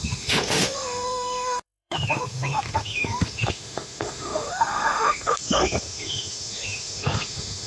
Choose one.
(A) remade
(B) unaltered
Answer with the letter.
A